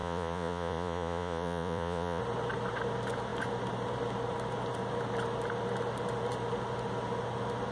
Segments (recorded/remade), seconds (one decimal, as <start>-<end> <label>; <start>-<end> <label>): 0.0-2.2 remade; 2.2-7.7 recorded